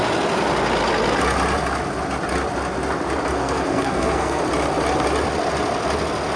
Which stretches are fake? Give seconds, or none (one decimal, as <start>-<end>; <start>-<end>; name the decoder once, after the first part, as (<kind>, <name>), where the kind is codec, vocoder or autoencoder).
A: 3.3-4.4 (codec, SNAC)